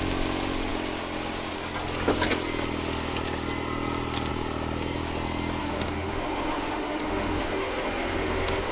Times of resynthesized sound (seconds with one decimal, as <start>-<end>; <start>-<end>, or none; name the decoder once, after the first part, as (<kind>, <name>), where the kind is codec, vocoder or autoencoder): 5.6-8.7 (autoencoder, DAC-VAE)